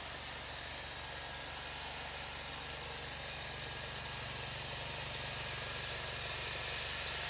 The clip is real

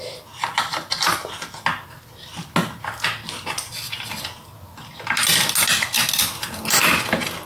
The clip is real